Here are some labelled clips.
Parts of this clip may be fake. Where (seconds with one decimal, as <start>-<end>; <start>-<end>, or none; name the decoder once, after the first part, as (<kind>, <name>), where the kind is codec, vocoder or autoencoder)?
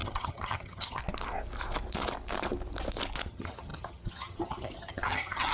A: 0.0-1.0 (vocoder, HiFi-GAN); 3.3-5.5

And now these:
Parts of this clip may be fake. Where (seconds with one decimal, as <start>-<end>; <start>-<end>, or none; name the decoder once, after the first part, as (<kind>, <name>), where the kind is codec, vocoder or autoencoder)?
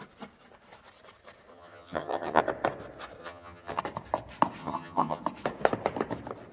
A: 1.5-2.4 (vocoder, HiFi-GAN); 3.2-3.8; 4.6-5.2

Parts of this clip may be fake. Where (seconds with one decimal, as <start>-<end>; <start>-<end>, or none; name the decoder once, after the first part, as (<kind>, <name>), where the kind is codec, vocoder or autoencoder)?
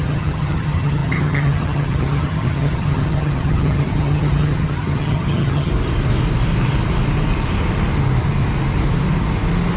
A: 0.0-5.7 (vocoder, HiFi-GAN)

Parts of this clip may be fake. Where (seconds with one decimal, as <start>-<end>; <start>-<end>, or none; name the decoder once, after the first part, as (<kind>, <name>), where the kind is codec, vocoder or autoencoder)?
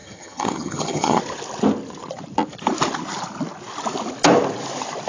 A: 0.0-1.2 (vocoder, HiFi-GAN)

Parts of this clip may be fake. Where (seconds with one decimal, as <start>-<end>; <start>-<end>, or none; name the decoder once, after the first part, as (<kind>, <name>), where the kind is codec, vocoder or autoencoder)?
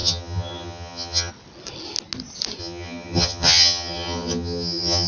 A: 0.0-1.3 (vocoder, HiFi-GAN); 2.6-5.1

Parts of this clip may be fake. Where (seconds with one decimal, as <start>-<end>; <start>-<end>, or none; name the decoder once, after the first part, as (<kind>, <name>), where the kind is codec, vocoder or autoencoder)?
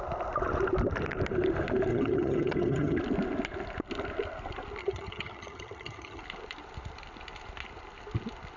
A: 1.9-3.0 (vocoder, HiFi-GAN); 4.8-6.2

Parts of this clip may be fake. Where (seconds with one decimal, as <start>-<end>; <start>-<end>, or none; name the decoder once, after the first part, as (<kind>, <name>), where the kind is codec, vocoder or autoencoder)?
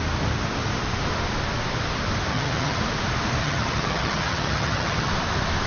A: 2.3-2.8 (vocoder, HiFi-GAN); 3.4-5.1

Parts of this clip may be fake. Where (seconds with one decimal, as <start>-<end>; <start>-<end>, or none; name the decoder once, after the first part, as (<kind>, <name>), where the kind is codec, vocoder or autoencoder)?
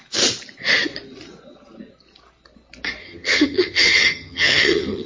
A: 3.0-5.1 (vocoder, HiFi-GAN)